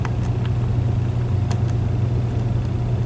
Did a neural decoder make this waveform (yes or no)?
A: no